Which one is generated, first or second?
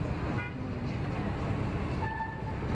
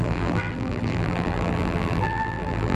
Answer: second